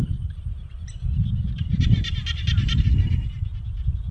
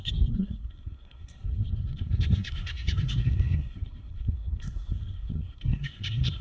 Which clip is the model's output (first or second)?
second